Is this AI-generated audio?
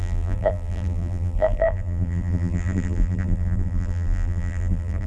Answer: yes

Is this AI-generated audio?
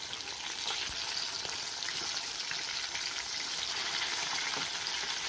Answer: no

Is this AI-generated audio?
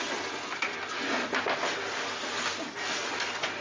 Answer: no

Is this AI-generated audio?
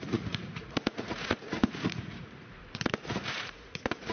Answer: yes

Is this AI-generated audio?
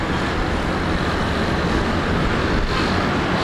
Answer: no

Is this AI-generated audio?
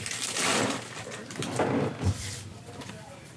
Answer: yes